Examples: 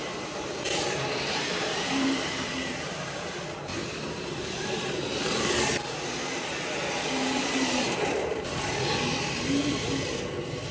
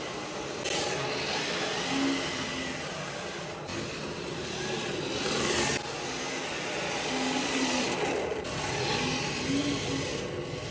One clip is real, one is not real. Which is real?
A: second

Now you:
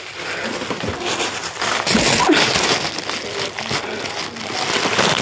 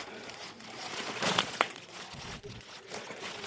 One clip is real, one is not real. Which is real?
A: first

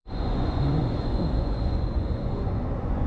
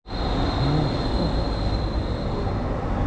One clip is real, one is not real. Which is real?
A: second